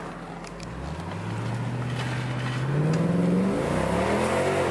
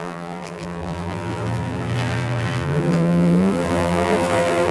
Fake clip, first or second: second